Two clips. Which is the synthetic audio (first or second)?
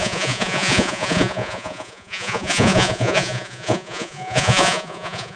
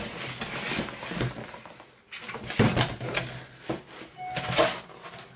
first